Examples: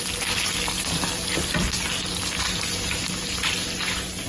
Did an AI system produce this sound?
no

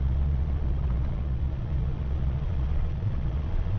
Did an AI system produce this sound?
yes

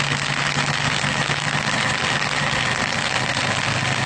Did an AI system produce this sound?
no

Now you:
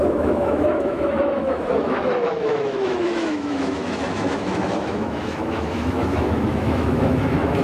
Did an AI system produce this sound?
yes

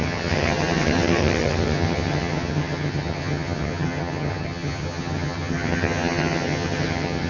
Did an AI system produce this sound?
yes